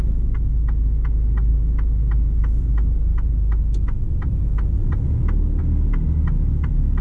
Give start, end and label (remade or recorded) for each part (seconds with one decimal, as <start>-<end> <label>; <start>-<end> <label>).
0.0-7.0 recorded